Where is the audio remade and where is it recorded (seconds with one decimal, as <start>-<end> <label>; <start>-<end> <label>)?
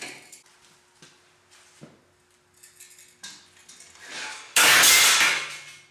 0.0-4.3 recorded; 4.3-5.0 remade; 5.0-5.9 recorded